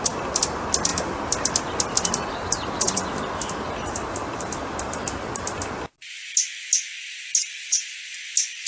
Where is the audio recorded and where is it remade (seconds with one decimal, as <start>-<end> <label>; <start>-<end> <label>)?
0.0-8.7 recorded